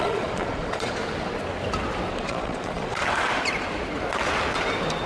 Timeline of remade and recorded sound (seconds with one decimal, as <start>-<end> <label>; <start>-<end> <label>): 0.0-1.0 remade; 1.0-2.1 recorded; 2.1-3.0 remade; 3.0-5.1 recorded